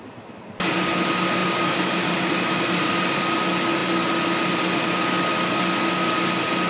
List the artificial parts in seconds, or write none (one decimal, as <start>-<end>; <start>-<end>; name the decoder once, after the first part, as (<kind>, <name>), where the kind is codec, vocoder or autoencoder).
1.4-3.2 (vocoder, BigVGAN v2)

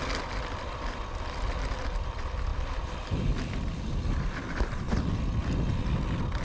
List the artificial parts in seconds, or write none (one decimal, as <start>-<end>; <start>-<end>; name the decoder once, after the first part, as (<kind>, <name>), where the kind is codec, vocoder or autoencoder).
2.5-5.1 (vocoder, BigVGAN v2)

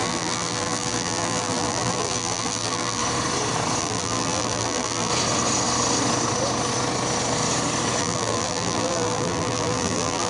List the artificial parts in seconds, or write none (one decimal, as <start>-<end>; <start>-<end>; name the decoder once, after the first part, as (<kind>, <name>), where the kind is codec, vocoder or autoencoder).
0.0-3.0 (vocoder, BigVGAN v2); 3.8-5.1; 8.0-10.3

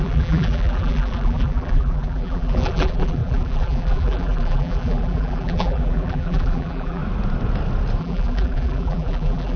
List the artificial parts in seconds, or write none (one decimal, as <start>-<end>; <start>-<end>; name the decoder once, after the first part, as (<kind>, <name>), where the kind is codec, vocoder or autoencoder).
0.0-7.0 (vocoder, BigVGAN v2); 8.0-9.6

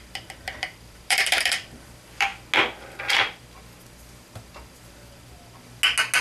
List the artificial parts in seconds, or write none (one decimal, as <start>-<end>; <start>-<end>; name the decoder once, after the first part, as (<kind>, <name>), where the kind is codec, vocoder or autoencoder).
0.0-2.3 (vocoder, BigVGAN v2)

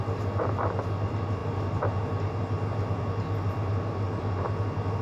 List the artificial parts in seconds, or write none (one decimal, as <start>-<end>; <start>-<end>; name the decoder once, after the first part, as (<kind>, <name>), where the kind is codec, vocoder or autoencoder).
none

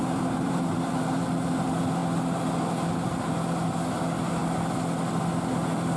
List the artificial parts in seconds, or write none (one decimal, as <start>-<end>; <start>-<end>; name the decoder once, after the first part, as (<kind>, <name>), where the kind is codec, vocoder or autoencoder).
0.0-1.6 (vocoder, BigVGAN v2)

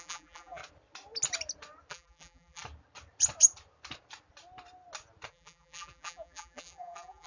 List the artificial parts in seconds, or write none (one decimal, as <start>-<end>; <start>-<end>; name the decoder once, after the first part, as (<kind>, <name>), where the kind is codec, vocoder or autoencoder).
0.0-0.6 (vocoder, BigVGAN v2); 1.9-2.6; 5.3-7.3